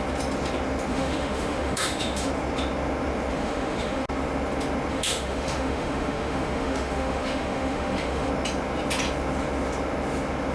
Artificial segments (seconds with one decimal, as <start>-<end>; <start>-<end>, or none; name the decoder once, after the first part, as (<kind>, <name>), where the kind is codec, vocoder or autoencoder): 0.9-2.3 (autoencoder, DAC-VAE); 3.3-4.1; 4.9-8.3